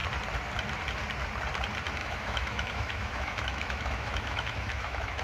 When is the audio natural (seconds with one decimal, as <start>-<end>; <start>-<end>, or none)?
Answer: 0.0-2.0